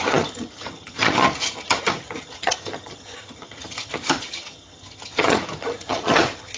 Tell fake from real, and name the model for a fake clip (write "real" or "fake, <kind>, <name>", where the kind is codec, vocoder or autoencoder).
fake, vocoder, HiFi-GAN